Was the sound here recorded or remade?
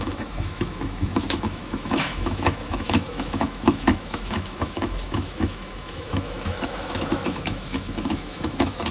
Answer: remade